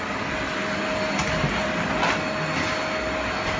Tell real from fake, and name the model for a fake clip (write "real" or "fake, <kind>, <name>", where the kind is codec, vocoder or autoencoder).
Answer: real